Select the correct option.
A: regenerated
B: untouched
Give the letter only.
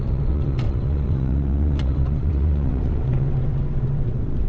A